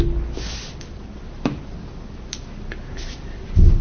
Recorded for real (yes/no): yes